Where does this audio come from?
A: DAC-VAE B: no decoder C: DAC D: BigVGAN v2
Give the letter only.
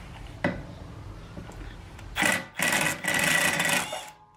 B